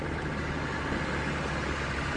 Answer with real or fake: real